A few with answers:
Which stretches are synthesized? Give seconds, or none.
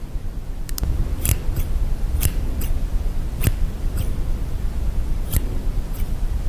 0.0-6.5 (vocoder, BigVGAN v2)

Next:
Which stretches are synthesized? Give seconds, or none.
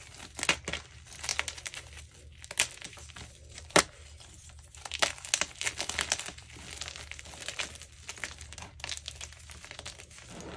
none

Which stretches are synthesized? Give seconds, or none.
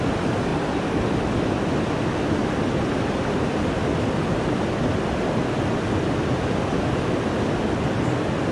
none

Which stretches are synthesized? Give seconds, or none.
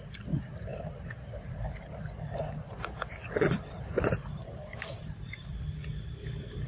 0.0-5.4 (vocoder, BigVGAN v2)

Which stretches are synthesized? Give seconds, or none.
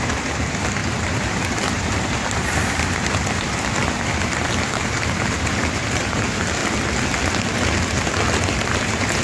0.0-6.6 (vocoder, BigVGAN v2); 8.7-9.2